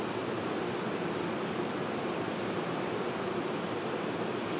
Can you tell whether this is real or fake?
real